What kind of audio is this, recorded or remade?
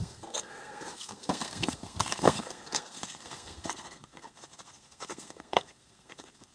remade